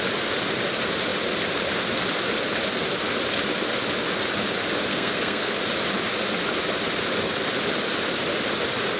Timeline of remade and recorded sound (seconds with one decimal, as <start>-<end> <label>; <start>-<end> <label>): 0.0-4.9 recorded; 4.9-5.5 remade; 5.5-9.0 recorded